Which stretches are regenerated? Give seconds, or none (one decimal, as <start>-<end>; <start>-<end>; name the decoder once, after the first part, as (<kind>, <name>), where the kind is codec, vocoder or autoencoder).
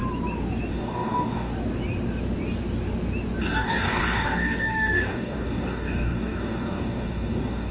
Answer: 0.7-1.5 (codec, DAC); 3.4-7.7